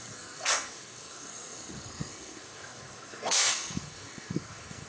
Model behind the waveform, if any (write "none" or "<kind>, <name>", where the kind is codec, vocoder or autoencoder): codec, SNAC